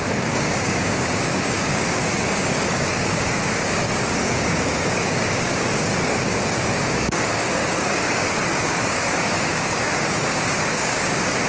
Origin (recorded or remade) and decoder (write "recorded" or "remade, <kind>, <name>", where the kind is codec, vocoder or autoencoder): remade, codec, DAC